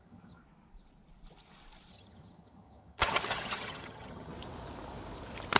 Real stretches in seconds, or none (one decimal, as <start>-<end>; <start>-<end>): 0.4-1.9; 4.3-5.6